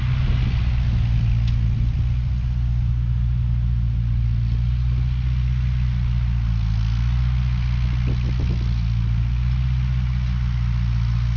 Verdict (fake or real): real